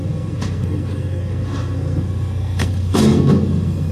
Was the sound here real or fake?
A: fake